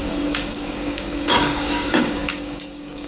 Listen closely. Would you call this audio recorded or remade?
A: remade